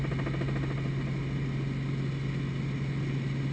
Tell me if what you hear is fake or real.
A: real